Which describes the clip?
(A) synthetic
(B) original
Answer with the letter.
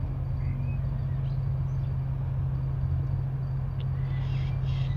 B